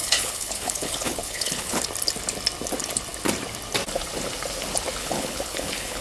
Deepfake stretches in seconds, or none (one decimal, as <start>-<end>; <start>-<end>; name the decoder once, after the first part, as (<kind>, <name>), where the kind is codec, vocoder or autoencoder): 0.0-1.8 (codec, HILCodec); 5.0-6.0